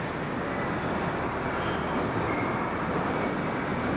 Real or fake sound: real